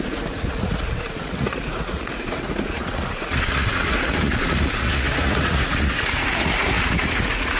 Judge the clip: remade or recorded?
remade